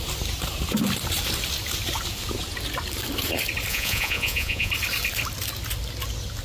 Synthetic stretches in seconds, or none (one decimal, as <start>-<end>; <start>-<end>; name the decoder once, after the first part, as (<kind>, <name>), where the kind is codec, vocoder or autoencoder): 3.7-4.7 (vocoder, Vocos)